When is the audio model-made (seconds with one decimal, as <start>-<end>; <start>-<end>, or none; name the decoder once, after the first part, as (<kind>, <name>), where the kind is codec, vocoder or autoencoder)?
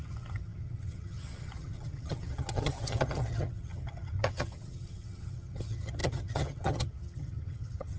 0.0-8.0 (vocoder, HiFi-GAN)